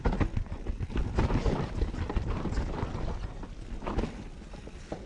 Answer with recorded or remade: recorded